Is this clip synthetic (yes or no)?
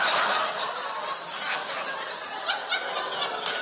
no